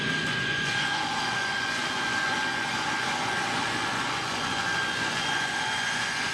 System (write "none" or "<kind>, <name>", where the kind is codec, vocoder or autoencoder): vocoder, Vocos